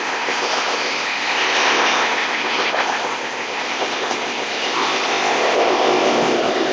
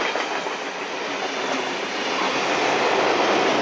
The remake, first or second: first